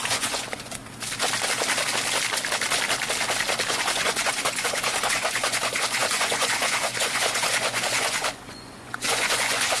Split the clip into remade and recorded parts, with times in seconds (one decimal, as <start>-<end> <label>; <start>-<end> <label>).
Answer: 0.0-0.8 remade; 0.8-3.7 recorded; 3.7-9.8 remade